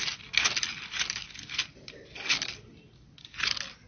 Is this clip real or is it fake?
real